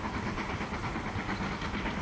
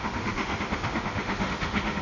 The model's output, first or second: second